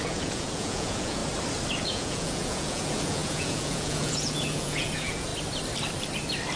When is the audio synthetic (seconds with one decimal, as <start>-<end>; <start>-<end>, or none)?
0.0-1.2; 1.8-5.3